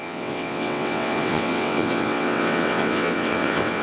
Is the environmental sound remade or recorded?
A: remade